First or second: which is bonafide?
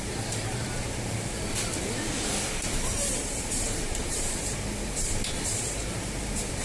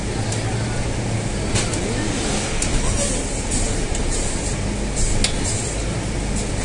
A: second